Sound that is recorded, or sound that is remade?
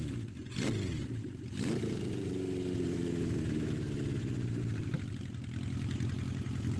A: recorded